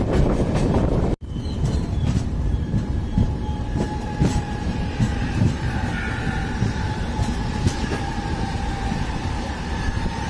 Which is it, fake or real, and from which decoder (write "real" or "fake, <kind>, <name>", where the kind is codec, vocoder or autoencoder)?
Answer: fake, vocoder, BigVGAN v2